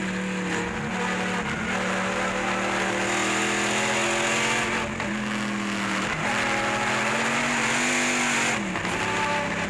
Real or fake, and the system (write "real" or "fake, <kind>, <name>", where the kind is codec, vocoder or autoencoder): real